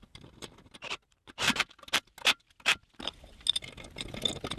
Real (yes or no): yes